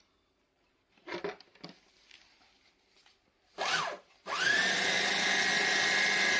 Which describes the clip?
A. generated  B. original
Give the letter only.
B